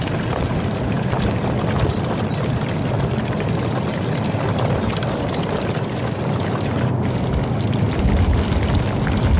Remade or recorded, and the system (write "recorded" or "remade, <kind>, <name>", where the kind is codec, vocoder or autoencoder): recorded